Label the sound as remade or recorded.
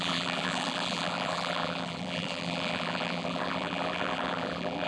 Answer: remade